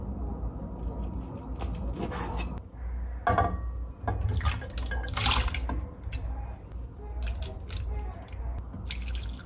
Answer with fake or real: real